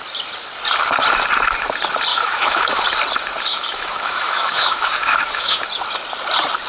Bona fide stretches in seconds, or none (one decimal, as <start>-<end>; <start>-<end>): 0.0-2.1; 2.8-3.5; 5.6-6.7